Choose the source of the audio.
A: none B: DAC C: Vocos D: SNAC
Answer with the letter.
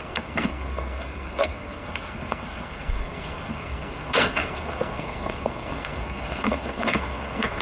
D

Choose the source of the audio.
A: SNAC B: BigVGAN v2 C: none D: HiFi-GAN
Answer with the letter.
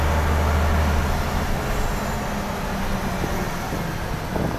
C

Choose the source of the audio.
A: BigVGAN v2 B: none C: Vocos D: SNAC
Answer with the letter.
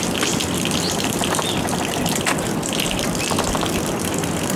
B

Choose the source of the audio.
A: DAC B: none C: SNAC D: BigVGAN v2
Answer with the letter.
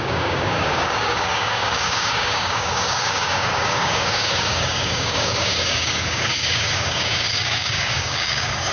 A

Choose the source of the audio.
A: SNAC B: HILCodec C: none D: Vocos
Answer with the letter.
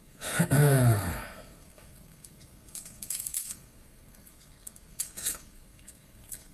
A